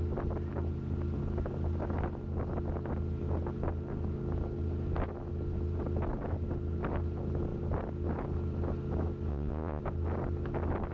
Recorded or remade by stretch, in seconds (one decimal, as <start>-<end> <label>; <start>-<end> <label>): 0.0-9.3 recorded; 9.3-9.8 remade; 9.8-10.9 recorded

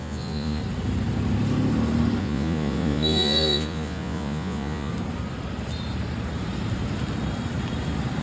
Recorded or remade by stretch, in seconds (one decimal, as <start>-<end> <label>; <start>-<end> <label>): 0.0-0.6 remade; 0.6-2.2 recorded; 2.2-4.9 remade; 4.9-8.2 recorded

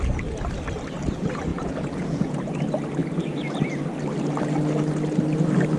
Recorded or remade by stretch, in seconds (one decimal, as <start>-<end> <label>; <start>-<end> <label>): 0.0-1.5 recorded; 1.5-2.4 remade; 2.4-5.8 recorded

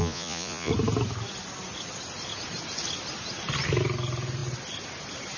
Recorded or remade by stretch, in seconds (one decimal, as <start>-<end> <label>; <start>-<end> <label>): 0.0-0.7 remade; 0.7-5.4 recorded

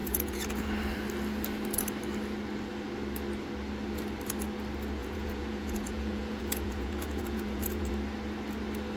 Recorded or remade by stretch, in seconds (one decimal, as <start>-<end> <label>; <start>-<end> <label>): 0.0-0.7 remade; 0.7-5.0 recorded; 5.0-7.9 remade; 7.9-9.0 recorded

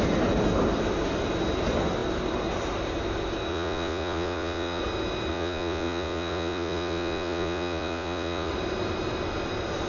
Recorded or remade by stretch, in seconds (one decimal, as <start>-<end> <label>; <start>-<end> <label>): 0.0-3.5 recorded; 3.5-4.8 remade; 4.8-5.3 recorded; 5.3-8.5 remade; 8.5-9.9 recorded